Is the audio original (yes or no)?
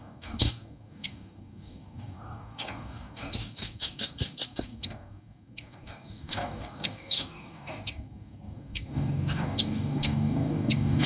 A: no